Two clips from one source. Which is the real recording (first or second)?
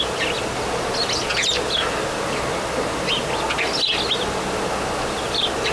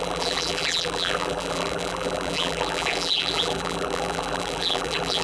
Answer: first